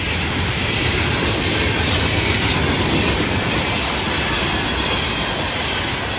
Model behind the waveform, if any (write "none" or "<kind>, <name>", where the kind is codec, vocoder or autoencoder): none